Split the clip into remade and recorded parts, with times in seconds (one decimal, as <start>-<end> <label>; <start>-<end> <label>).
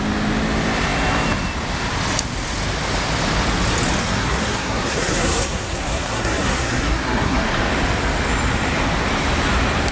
0.0-4.0 recorded; 4.0-7.5 remade; 7.5-9.9 recorded